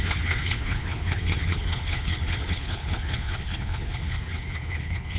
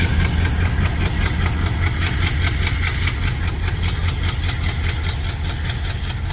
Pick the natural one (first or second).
second